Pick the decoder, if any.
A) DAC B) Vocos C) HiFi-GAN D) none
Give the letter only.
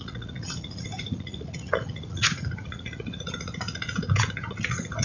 B